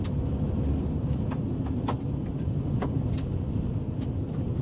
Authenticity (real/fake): real